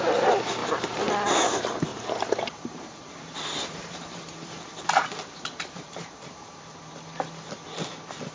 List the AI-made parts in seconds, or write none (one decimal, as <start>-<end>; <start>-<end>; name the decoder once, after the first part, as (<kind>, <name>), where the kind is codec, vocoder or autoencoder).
0.6-1.1 (vocoder, BigVGAN v2); 1.9-6.9

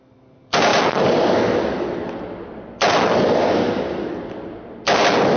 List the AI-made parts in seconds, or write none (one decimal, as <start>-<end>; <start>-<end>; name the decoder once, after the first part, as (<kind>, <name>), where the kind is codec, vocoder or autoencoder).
none

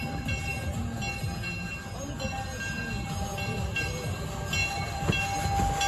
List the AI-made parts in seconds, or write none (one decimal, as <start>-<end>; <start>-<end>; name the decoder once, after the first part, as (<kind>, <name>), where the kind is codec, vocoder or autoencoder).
4.6-5.2 (vocoder, BigVGAN v2)

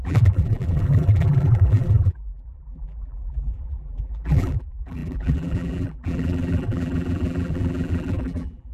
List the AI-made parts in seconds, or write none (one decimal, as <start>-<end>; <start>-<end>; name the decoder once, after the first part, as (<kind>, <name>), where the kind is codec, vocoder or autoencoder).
0.0-8.7 (vocoder, BigVGAN v2)